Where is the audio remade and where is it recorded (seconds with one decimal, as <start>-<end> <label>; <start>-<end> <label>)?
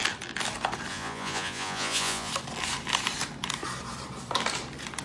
0.0-0.9 recorded; 0.9-2.3 remade; 2.3-5.0 recorded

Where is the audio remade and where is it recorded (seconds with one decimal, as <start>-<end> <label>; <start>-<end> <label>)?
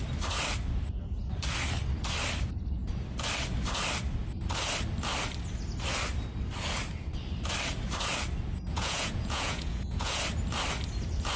0.0-8.7 recorded; 8.7-10.2 remade; 10.2-11.4 recorded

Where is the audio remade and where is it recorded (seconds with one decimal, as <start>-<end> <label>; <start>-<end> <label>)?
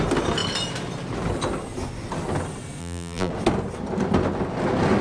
0.0-2.8 recorded; 2.8-3.3 remade; 3.3-5.0 recorded